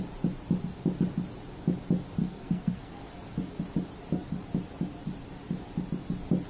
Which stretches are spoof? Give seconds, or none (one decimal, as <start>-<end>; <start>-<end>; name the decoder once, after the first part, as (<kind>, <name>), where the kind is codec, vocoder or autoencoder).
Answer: 2.2-3.1 (codec, SNAC)

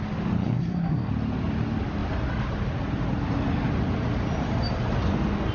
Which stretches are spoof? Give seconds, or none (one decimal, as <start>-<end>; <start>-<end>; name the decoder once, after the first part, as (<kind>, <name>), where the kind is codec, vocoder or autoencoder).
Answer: 0.4-1.1 (codec, SNAC)

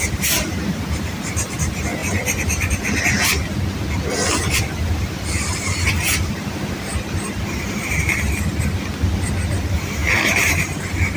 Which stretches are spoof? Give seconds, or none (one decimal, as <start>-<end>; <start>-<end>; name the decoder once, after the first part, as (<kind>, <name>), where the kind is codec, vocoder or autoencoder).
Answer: 0.0-2.0 (vocoder, BigVGAN v2); 4.6-6.9; 9.5-11.2

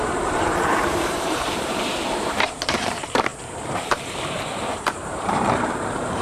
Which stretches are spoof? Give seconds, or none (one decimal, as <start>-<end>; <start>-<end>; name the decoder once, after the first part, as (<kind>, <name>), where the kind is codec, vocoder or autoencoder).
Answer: 0.0-6.2 (vocoder, BigVGAN v2)

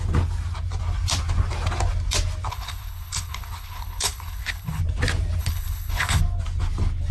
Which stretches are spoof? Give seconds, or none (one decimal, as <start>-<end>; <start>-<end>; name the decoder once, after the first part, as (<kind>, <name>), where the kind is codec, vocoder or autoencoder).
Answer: 2.5-4.8 (codec, HILCodec); 5.4-6.2

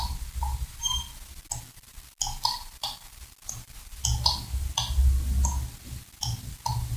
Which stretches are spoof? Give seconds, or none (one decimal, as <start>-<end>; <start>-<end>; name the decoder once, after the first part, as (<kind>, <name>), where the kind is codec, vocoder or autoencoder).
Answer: none

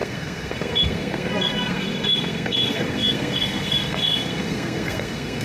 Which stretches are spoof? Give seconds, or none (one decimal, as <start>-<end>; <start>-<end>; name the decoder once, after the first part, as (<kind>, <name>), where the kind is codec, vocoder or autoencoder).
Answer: 0.0-5.4 (codec, SNAC)

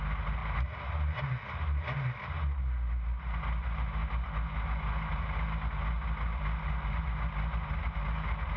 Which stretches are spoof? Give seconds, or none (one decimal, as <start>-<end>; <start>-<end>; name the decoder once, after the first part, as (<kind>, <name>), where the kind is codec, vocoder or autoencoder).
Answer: none